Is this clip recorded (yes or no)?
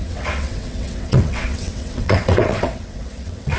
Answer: no